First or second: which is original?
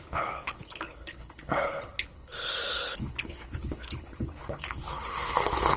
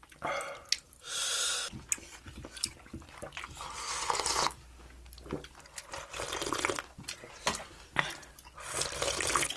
second